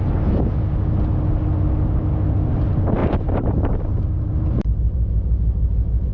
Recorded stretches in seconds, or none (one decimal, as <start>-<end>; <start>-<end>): 0.0-3.0